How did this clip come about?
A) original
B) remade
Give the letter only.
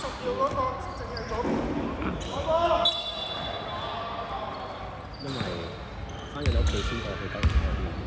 A